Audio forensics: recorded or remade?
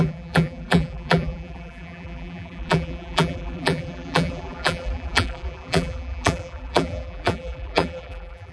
remade